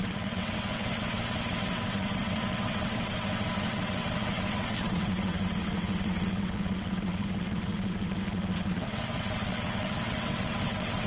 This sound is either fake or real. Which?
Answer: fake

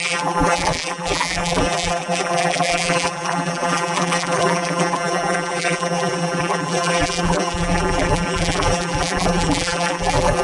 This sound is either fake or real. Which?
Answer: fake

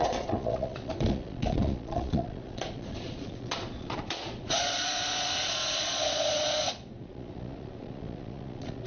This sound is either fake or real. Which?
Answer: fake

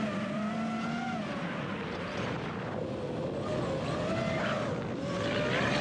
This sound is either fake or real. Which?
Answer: real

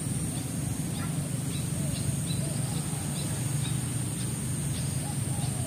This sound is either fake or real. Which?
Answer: real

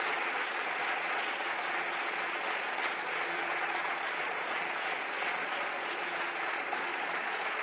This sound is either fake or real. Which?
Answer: fake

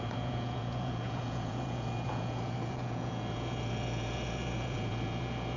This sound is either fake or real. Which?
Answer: fake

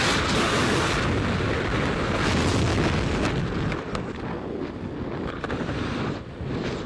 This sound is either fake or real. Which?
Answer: real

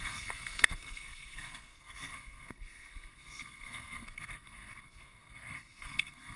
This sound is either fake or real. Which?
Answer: fake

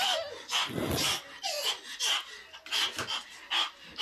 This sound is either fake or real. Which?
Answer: real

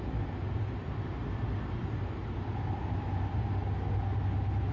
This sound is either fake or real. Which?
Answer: real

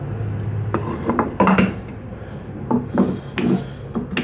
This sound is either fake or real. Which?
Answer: real